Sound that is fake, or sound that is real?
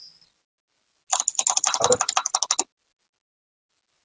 real